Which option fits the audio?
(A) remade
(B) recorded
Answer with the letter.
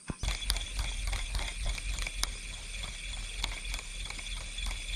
B